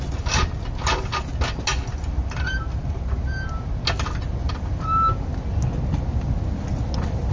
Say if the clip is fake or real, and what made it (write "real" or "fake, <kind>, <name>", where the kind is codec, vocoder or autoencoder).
real